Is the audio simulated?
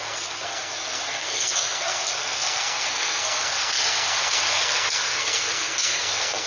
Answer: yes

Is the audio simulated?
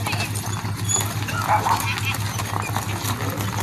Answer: no